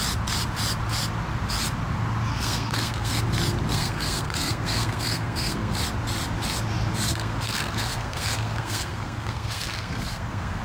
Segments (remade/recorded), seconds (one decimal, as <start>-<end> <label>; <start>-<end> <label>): 0.0-2.3 recorded; 2.3-3.2 remade; 3.2-3.7 recorded; 3.7-5.8 remade; 5.8-6.9 recorded; 6.9-10.6 remade